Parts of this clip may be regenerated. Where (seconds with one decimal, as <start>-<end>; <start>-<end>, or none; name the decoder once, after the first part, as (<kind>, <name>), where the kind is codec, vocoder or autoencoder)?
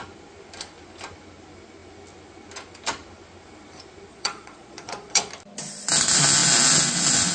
4.1-5.3 (vocoder, Vocos)